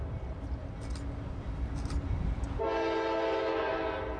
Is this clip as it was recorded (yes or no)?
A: yes